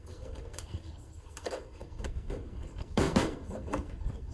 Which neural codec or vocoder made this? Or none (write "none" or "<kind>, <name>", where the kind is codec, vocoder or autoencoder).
codec, SNAC